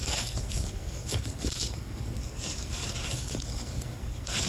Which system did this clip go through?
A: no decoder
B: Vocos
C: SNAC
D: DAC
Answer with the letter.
C